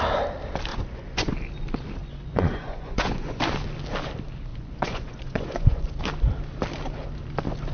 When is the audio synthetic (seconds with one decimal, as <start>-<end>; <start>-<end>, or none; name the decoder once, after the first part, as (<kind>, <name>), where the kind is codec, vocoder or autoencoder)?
0.7-1.3 (vocoder, Vocos); 2.0-3.4; 4.5-6.0